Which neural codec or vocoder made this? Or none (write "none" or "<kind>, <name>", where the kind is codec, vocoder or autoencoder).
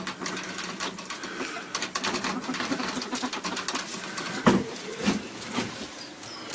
vocoder, BigVGAN v2